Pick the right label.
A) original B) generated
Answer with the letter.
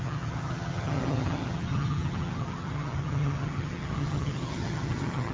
B